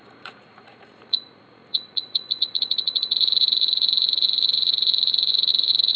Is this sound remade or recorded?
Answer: remade